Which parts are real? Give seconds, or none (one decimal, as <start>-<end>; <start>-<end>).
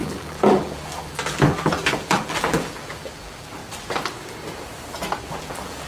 3.6-5.2